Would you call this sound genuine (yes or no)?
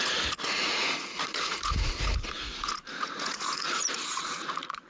no